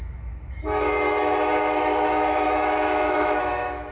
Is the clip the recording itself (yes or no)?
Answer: no